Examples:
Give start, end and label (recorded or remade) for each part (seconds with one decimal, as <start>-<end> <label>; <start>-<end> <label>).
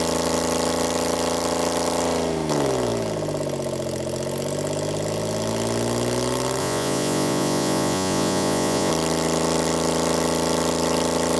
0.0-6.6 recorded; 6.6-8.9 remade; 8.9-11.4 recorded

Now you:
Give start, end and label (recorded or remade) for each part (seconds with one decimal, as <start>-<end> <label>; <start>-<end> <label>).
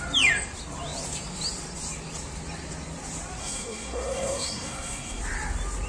0.0-3.4 recorded; 3.4-5.2 remade; 5.2-5.9 recorded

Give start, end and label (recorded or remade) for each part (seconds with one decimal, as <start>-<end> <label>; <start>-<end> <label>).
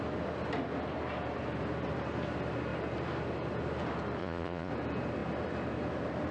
0.0-4.2 recorded; 4.2-4.7 remade; 4.7-6.3 recorded